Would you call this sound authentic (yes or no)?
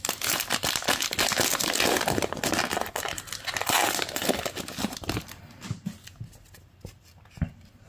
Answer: yes